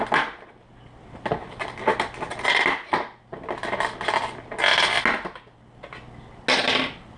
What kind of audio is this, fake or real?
real